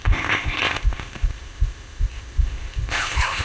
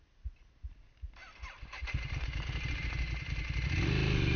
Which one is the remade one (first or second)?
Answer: first